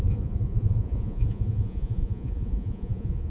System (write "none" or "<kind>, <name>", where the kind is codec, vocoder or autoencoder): vocoder, Vocos